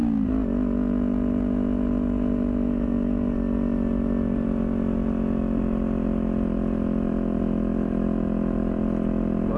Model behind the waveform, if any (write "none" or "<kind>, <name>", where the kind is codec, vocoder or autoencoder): none